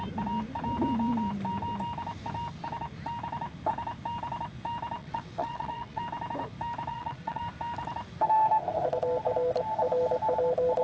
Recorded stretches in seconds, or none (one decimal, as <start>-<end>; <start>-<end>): 0.0-5.0; 6.0-6.9; 7.4-10.8